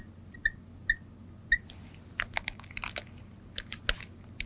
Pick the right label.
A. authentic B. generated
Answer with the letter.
A